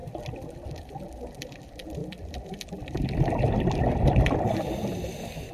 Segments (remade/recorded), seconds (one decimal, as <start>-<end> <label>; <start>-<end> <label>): 0.0-2.0 recorded; 2.0-5.5 remade